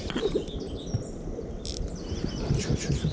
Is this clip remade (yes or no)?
no